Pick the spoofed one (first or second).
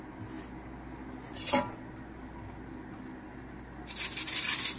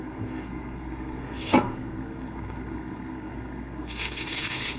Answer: second